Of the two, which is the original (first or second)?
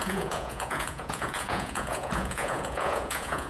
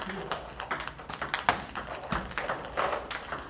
second